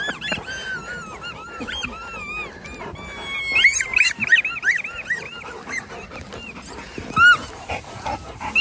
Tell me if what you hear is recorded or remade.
recorded